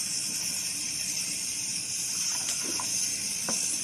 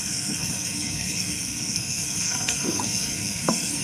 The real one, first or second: first